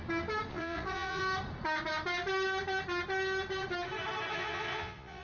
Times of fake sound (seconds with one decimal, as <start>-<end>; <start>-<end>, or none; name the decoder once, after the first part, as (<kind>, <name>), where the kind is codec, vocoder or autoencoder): 0.5-1.2 (vocoder, Vocos); 4.3-5.2